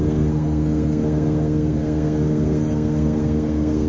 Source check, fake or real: fake